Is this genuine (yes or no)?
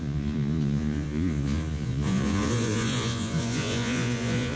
no